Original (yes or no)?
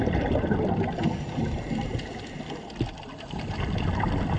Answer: yes